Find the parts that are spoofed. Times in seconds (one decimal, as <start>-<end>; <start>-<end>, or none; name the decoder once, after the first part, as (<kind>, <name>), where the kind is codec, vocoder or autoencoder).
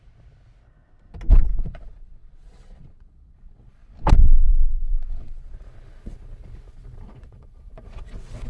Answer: 1.3-3.9 (vocoder, Vocos); 4.4-8.5